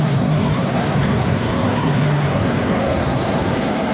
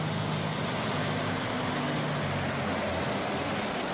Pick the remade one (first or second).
first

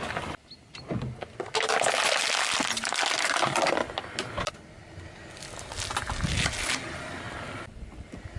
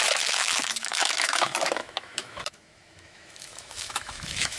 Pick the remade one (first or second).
second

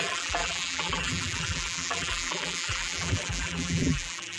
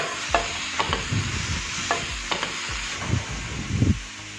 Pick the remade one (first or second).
first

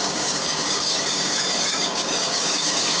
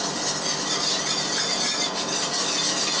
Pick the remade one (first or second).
first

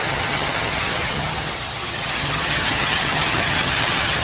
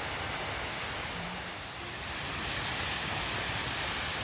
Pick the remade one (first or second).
first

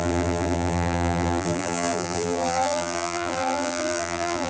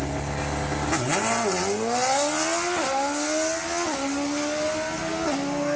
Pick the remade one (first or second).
first